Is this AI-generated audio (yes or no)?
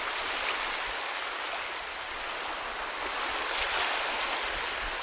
no